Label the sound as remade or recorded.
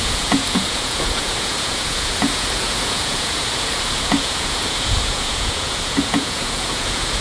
remade